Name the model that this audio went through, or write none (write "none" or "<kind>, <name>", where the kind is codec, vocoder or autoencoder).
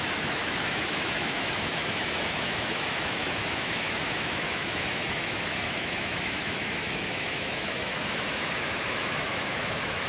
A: autoencoder, DAC-VAE